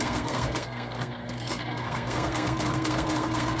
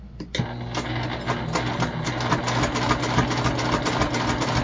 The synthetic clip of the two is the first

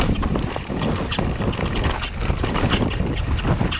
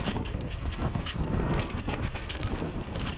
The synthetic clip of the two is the second